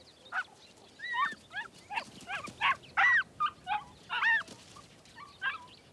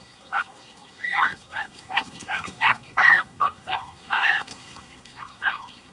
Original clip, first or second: first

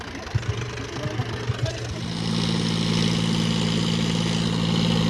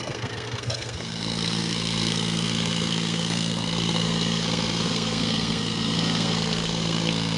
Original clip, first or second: first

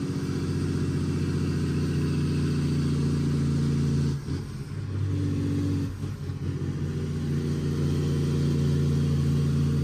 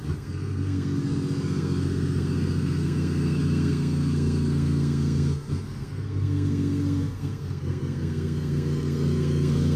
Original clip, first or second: first